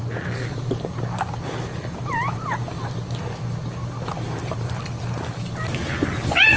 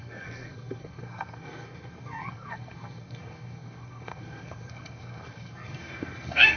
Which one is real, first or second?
first